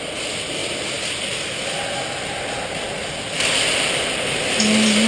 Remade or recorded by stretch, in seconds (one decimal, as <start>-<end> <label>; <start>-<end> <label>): 0.0-5.1 recorded

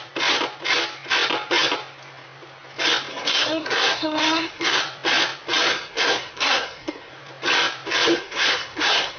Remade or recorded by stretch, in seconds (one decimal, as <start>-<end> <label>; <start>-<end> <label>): 0.0-3.1 recorded; 3.1-4.8 remade; 4.8-5.7 recorded; 5.7-7.1 remade; 7.1-8.1 recorded; 8.1-9.2 remade

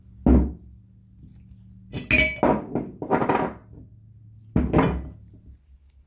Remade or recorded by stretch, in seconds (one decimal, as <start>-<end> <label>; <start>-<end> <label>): 0.0-6.1 recorded

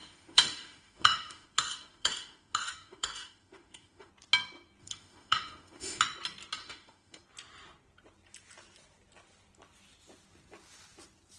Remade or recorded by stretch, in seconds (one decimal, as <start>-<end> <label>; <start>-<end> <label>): 0.0-4.1 remade; 4.1-4.8 recorded; 4.8-6.0 remade; 6.0-6.6 recorded; 6.6-7.2 remade; 7.2-11.4 recorded

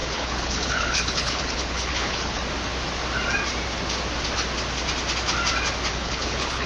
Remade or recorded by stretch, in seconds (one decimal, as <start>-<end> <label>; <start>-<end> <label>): 0.0-2.4 remade; 2.4-5.9 recorded; 5.9-6.7 remade